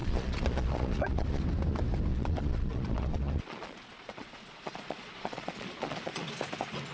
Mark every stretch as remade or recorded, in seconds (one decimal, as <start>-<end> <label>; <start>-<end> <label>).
0.0-1.4 remade; 1.4-2.1 recorded; 2.1-6.2 remade; 6.2-6.9 recorded

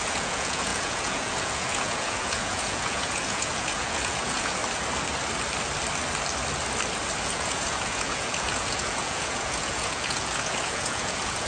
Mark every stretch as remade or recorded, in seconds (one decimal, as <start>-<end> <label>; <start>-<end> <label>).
0.0-4.6 remade; 4.6-7.2 recorded; 7.2-11.5 remade

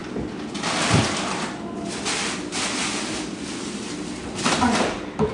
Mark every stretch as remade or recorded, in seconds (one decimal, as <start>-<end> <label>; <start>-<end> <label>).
0.0-5.3 recorded